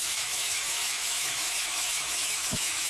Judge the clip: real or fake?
fake